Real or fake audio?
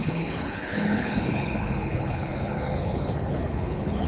fake